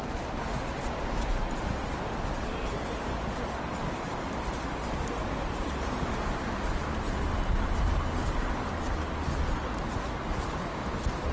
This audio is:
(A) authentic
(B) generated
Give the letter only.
A